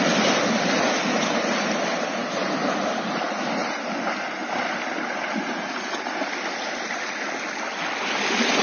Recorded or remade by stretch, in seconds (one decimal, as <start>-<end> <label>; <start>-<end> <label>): 0.0-8.6 recorded